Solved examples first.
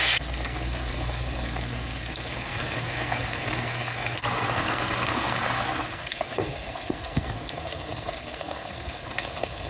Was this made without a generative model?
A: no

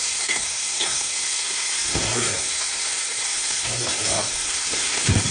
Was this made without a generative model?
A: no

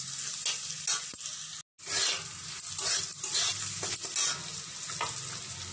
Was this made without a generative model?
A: yes